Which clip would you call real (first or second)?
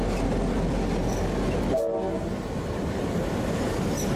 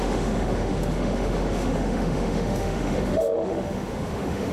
first